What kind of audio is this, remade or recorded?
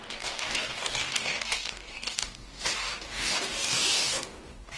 remade